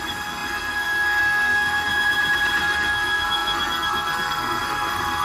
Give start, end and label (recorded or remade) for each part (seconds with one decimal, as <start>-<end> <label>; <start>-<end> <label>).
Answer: 0.0-1.9 remade; 1.9-2.6 recorded; 2.6-5.2 remade